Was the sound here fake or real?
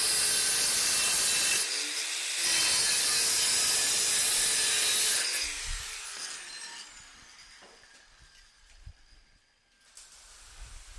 real